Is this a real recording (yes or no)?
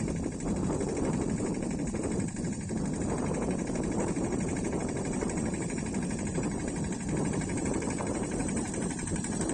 no